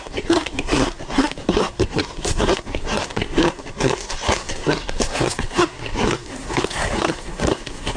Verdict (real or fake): fake